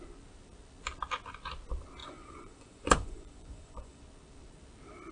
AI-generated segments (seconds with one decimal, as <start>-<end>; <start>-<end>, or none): 2.0-4.0